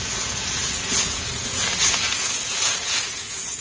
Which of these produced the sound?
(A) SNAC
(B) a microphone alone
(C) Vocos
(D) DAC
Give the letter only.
C